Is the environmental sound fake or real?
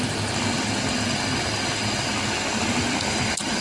real